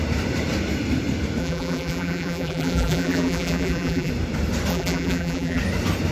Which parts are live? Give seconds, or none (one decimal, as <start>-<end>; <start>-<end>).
0.0-1.4; 4.1-4.7; 5.6-6.1

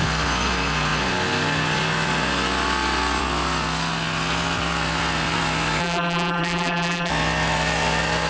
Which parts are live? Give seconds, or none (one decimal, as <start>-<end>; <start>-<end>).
0.0-5.8; 7.1-8.3

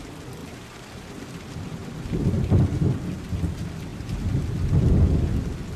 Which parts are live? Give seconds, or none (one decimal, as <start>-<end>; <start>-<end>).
0.0-0.4; 1.1-5.8

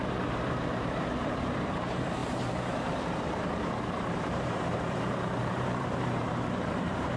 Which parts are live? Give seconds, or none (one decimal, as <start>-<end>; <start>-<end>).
none

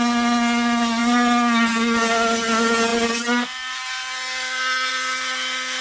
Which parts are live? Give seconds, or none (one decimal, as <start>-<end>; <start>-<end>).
0.0-5.8